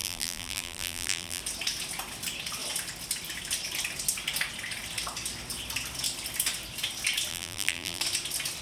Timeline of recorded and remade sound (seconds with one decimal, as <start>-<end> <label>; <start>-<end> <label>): 0.0-1.4 remade; 1.4-7.3 recorded; 7.3-8.0 remade; 8.0-8.6 recorded

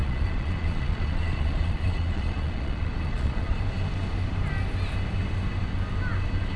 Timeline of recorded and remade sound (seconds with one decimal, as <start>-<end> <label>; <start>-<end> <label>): 0.0-3.6 remade; 3.6-6.6 recorded

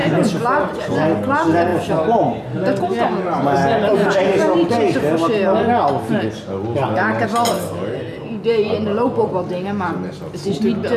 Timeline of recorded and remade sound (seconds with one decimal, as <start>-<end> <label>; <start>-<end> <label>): 0.0-0.9 remade; 0.9-1.7 recorded; 1.7-2.8 remade; 2.8-11.0 recorded